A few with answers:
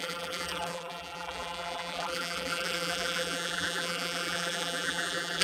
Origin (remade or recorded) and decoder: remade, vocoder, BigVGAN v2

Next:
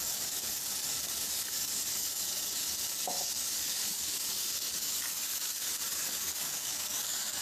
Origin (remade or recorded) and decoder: remade, codec, DAC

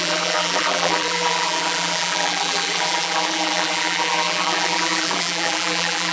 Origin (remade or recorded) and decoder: remade, vocoder, BigVGAN v2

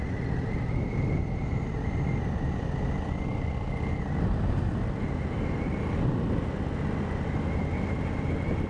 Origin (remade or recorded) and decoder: recorded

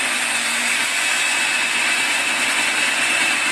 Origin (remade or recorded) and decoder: remade, vocoder, Vocos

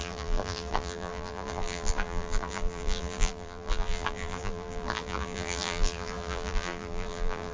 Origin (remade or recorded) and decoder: remade, vocoder, BigVGAN v2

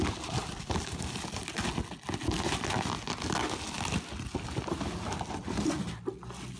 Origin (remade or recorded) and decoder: recorded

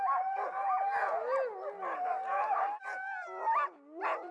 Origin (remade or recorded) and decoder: recorded